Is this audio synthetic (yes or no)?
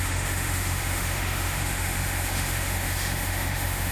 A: yes